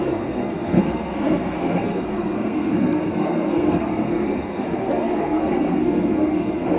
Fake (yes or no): yes